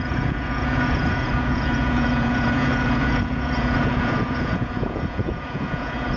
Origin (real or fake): fake